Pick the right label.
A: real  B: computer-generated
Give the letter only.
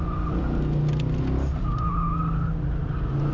A